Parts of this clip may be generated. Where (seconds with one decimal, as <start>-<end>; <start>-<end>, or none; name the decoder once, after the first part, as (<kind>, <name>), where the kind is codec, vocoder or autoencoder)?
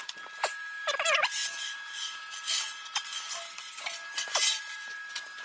1.4-4.6 (vocoder, BigVGAN v2)